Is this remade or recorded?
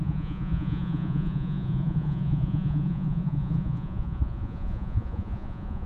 remade